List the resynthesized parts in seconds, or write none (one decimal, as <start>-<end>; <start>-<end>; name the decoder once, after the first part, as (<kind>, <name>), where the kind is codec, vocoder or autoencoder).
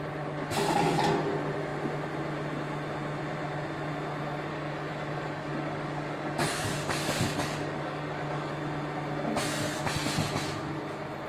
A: 4.5-8.5 (codec, DAC)